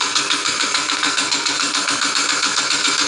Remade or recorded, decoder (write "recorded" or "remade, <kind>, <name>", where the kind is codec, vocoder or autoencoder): remade, codec, SNAC